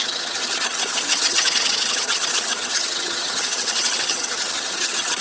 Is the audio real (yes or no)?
no